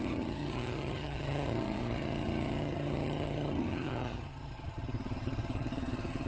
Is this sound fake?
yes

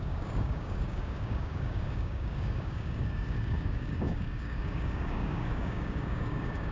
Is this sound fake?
yes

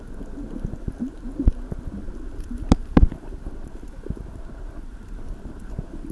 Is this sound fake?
no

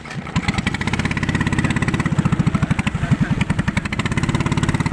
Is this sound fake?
no